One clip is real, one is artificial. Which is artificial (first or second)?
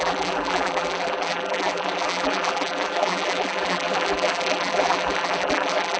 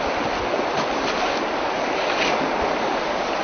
first